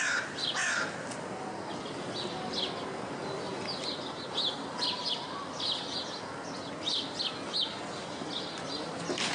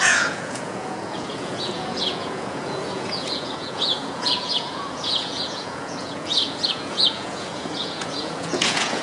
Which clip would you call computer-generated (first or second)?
second